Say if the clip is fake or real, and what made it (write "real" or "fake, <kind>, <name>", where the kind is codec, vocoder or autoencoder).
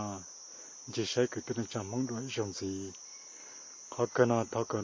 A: real